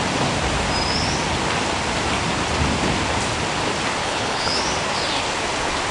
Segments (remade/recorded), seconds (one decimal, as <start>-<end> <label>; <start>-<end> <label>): 0.0-4.0 recorded; 4.0-4.6 remade; 4.6-5.9 recorded